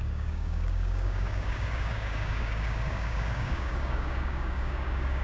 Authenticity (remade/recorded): remade